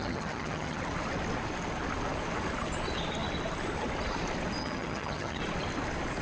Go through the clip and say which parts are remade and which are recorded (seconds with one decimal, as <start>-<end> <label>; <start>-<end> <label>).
0.0-0.8 remade; 0.8-4.6 recorded; 4.6-5.4 remade; 5.4-6.2 recorded